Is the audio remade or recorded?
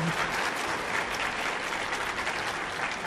recorded